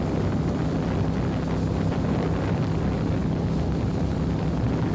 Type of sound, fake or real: real